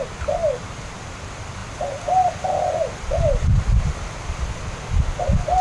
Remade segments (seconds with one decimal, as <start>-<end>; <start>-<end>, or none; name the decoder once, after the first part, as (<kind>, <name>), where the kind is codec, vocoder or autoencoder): none